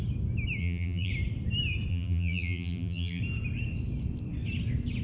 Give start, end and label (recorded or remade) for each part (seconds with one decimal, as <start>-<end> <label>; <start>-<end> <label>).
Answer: 0.0-0.6 recorded; 0.6-1.1 remade; 1.1-1.9 recorded; 1.9-3.2 remade; 3.2-5.0 recorded